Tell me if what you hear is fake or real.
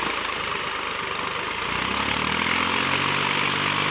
real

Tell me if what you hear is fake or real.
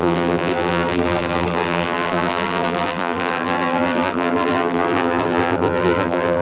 fake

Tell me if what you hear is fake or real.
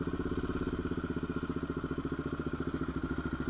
real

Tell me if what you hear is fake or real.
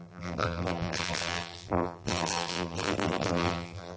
fake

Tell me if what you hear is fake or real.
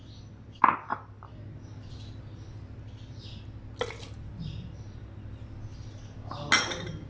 real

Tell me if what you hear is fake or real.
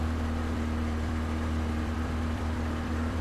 fake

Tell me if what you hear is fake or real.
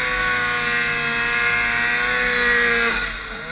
real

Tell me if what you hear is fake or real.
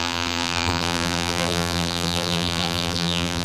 fake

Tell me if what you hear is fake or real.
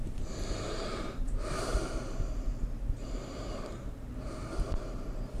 fake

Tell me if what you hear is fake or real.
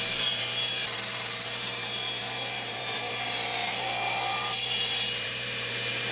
fake